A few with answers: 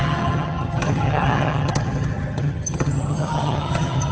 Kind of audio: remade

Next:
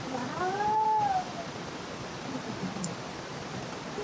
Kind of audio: recorded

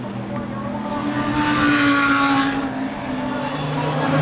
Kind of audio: recorded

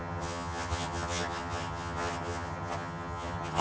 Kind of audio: remade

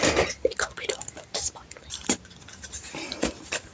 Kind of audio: recorded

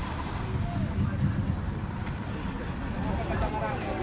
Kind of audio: recorded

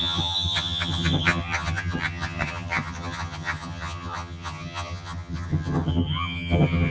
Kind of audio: remade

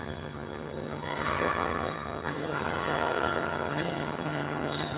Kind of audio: remade